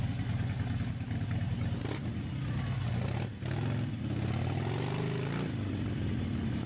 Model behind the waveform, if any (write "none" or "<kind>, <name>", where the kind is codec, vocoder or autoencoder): none